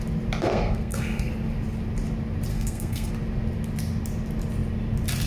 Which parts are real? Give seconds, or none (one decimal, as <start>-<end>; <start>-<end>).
0.0-0.4; 1.3-2.5; 3.1-5.3